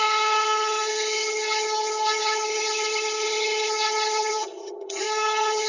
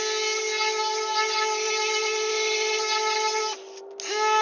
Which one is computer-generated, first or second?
first